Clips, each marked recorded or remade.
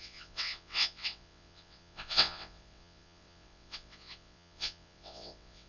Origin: remade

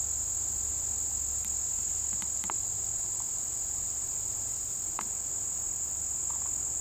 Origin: recorded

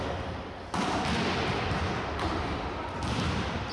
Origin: recorded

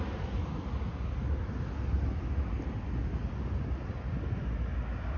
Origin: recorded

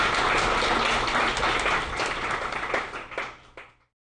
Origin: recorded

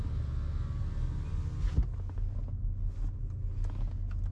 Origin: recorded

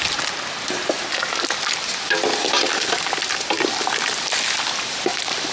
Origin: recorded